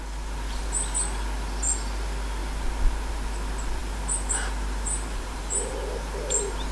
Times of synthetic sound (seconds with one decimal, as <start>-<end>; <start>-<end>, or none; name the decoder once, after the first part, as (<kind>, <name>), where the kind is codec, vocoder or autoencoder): 3.8-5.7 (vocoder, BigVGAN v2)